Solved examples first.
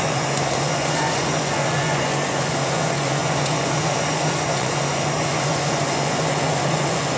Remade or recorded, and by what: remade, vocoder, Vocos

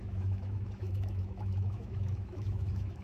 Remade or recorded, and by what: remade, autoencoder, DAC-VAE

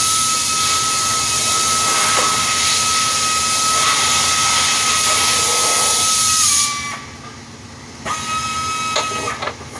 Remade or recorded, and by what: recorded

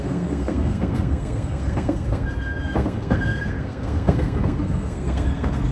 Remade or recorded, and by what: remade, codec, SNAC